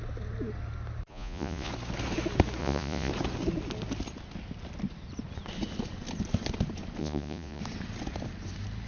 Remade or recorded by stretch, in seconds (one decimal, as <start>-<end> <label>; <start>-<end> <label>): 0.0-1.1 recorded; 1.1-1.7 remade; 1.7-2.6 recorded; 2.6-3.1 remade; 3.1-7.0 recorded; 7.0-7.6 remade; 7.6-8.9 recorded